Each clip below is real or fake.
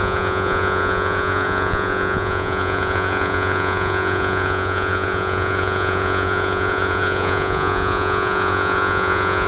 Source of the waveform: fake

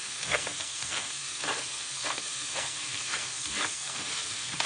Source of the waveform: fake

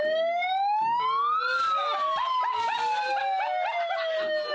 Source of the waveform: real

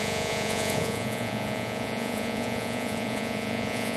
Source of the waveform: fake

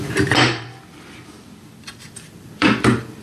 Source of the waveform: fake